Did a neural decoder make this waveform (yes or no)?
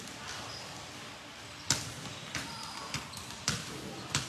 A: no